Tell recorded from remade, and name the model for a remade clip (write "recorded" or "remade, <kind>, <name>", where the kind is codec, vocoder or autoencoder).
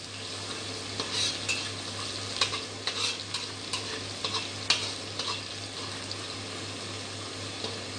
recorded